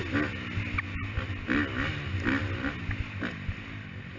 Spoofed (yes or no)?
no